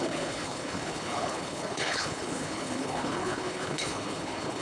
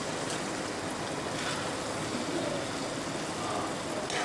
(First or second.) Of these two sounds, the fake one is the first